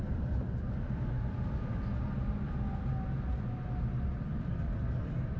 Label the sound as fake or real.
real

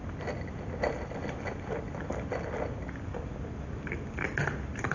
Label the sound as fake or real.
real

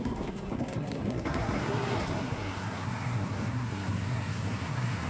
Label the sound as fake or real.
fake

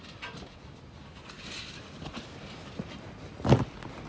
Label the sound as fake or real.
real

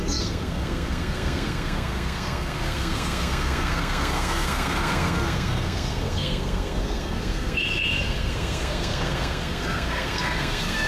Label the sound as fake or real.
fake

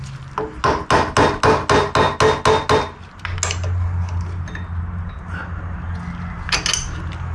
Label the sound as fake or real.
real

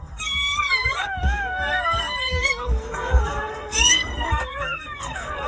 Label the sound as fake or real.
fake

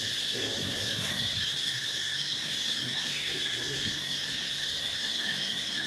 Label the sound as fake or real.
fake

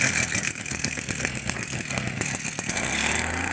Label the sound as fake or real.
fake